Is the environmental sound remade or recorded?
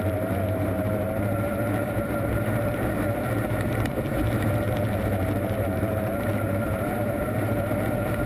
remade